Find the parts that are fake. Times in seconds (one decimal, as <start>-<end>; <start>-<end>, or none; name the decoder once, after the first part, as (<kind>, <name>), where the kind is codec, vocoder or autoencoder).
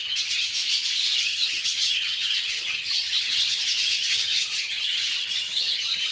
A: 0.0-0.5 (vocoder, HiFi-GAN); 1.2-6.1